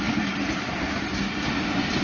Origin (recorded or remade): recorded